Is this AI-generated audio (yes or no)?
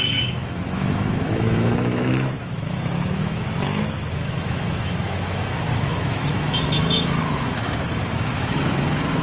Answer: yes